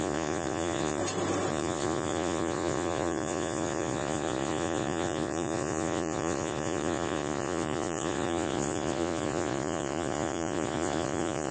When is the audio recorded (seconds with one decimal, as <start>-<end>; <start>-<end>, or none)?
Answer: 1.0-1.5